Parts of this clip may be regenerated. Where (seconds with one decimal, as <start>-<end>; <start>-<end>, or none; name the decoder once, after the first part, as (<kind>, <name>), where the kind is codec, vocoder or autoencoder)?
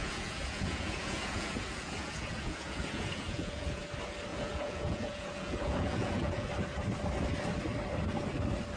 0.0-3.8 (vocoder, Vocos); 4.3-6.5